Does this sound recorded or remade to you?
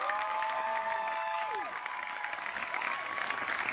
remade